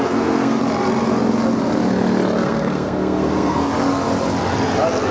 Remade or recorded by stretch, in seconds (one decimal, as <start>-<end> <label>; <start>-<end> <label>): 0.0-0.6 remade; 0.6-2.4 recorded; 2.4-3.7 remade; 3.7-5.1 recorded